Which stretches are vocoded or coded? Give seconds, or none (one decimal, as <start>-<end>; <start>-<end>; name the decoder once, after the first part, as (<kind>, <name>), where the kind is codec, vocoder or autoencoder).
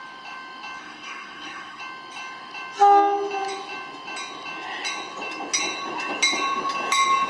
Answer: 0.8-1.8 (codec, SNAC)